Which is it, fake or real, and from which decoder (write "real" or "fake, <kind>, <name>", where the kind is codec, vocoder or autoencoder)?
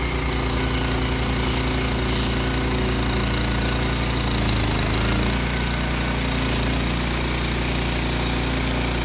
real